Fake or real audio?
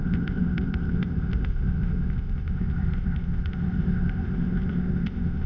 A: fake